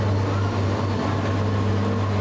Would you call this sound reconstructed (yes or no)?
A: no